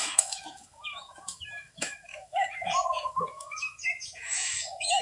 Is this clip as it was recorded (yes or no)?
no